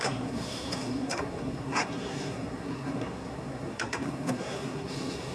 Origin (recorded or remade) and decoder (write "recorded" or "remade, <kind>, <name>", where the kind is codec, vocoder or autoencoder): remade, codec, SNAC